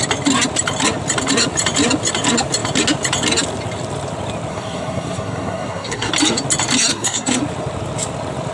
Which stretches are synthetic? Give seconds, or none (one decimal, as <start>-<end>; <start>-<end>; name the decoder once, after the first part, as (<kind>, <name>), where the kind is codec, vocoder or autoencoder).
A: 4.5-6.1 (codec, SNAC); 6.9-7.4